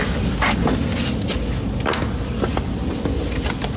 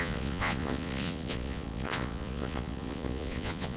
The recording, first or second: first